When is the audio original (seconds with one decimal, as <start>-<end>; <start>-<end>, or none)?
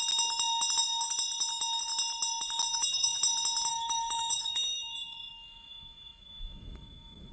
0.0-2.7; 3.2-3.7